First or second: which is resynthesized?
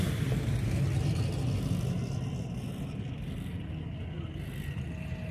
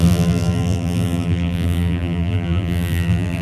second